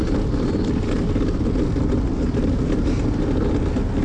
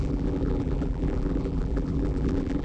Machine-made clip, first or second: second